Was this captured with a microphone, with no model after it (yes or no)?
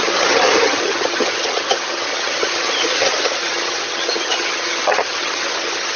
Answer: no